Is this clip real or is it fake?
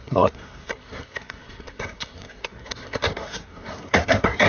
fake